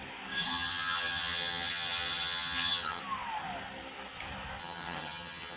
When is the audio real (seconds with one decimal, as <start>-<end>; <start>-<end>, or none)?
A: 0.0-0.5; 3.0-4.6